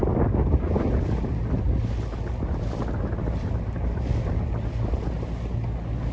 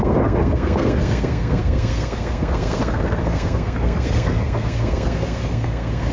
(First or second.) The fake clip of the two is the second